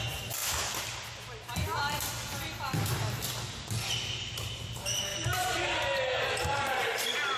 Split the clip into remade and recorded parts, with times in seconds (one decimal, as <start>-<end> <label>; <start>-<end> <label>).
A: 0.0-7.4 recorded